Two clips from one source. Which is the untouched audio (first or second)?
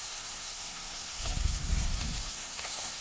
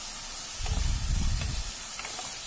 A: second